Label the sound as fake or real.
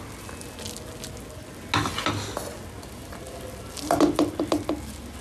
real